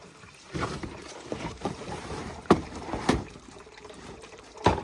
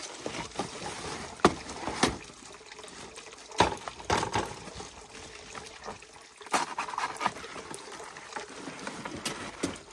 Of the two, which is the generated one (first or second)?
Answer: first